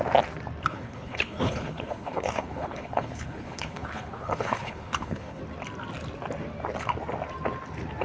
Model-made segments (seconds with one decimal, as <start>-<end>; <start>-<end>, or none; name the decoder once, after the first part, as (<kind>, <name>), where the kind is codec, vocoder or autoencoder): 0.7-5.4 (codec, HILCodec)